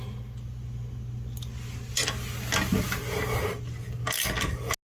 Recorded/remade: recorded